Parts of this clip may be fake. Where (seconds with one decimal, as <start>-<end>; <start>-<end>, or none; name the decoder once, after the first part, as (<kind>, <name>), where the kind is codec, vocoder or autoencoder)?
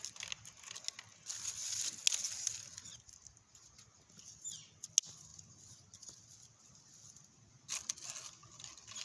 none